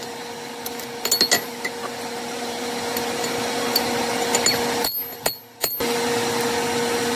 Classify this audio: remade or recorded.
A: recorded